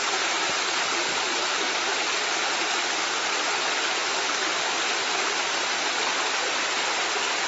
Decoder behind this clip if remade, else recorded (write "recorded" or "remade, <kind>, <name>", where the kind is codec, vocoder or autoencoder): remade, vocoder, BigVGAN v2